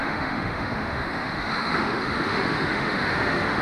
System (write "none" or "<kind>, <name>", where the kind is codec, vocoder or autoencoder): autoencoder, DAC-VAE